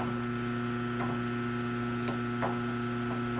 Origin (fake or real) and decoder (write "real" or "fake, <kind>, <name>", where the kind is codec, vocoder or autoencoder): real